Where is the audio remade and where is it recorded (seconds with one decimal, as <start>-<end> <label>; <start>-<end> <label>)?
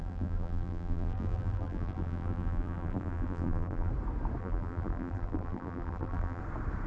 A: 0.0-3.9 remade; 3.9-4.4 recorded; 4.4-6.4 remade; 6.4-6.9 recorded